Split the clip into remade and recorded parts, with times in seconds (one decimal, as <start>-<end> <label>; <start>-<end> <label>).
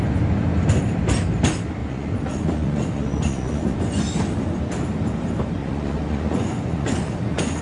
0.0-1.8 recorded; 1.8-4.0 remade; 4.0-5.6 recorded; 5.6-7.6 remade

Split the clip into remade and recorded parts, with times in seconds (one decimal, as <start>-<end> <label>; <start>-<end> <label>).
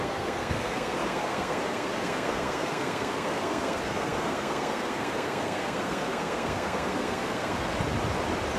0.0-7.7 remade; 7.7-8.6 recorded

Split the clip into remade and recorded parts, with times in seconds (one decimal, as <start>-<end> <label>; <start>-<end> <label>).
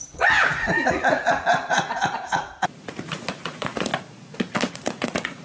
0.0-3.9 remade; 3.9-4.7 recorded; 4.7-5.4 remade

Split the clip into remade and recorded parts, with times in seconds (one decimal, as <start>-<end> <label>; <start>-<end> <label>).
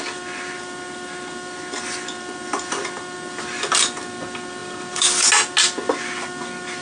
0.0-6.8 recorded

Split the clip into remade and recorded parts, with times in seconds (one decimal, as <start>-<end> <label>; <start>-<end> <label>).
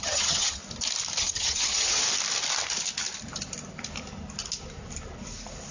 0.0-0.6 remade; 0.6-1.2 recorded; 1.2-2.0 remade; 2.0-5.7 recorded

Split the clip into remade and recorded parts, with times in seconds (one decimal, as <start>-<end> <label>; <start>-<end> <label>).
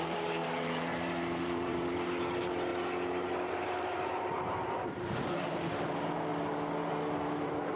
0.0-2.7 remade; 2.7-3.5 recorded; 3.5-6.3 remade; 6.3-6.9 recorded; 6.9-7.8 remade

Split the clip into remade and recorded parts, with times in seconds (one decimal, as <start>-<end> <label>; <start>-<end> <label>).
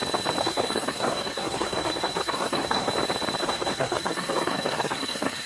0.0-0.4 recorded; 0.4-2.9 remade; 2.9-3.4 recorded; 3.4-5.5 remade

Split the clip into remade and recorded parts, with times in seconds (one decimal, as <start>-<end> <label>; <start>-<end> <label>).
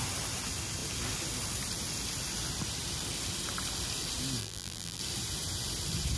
0.0-4.4 recorded; 4.4-5.0 remade; 5.0-6.2 recorded